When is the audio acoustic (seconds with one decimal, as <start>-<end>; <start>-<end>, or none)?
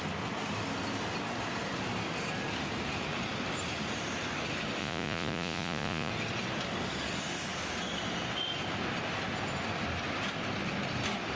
0.0-4.8; 6.1-11.4